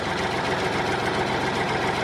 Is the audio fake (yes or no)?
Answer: no